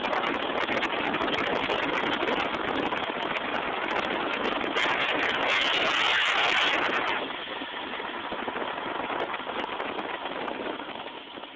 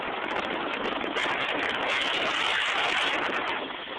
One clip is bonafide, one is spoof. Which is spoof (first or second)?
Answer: second